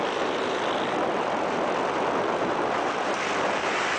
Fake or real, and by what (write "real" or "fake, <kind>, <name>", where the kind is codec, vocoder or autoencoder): real